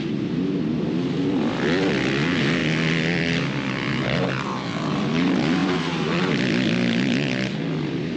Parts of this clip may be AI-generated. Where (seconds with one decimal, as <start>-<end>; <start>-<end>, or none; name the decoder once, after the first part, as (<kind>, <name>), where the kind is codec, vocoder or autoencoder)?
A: none